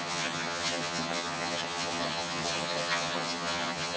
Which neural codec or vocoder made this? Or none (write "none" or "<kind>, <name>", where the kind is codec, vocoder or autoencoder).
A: vocoder, HiFi-GAN